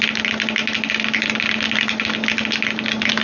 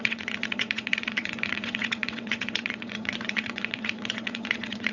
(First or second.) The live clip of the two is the first